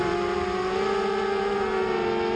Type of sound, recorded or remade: recorded